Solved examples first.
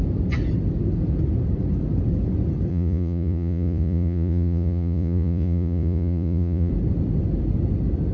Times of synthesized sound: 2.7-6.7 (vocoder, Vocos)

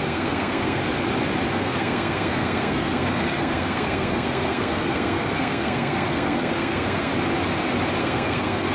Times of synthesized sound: 0.0-0.8 (codec, SNAC); 1.5-7.1; 8.0-8.7

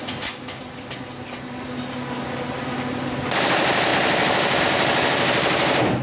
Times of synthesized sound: none

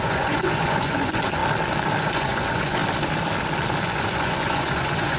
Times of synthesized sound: 0.0-1.4 (vocoder, Vocos); 2.0-2.8; 3.8-5.2

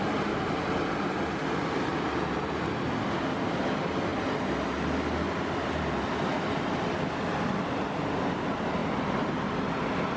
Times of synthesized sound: 1.9-2.6 (vocoder, BigVGAN v2); 8.8-9.4